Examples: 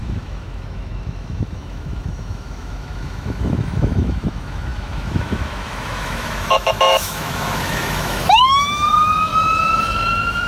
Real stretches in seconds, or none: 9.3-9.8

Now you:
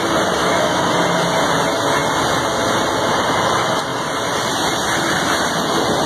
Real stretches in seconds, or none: 0.0-0.4; 0.9-6.1

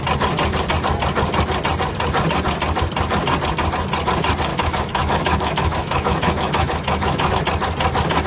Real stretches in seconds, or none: 0.0-4.5; 7.3-8.3

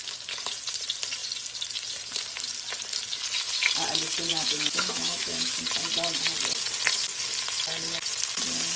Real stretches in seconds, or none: 0.0-4.3; 5.6-8.8

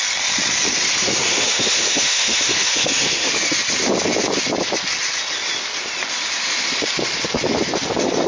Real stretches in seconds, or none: 0.0-1.0; 3.3-8.3

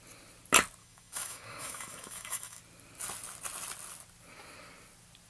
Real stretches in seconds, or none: 0.0-0.8; 2.6-5.3

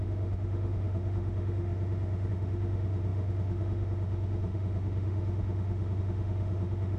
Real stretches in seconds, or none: none